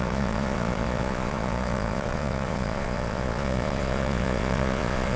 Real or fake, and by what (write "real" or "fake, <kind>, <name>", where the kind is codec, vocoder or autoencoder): fake, vocoder, Vocos